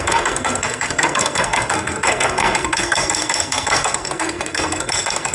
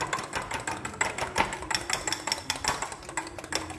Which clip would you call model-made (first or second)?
first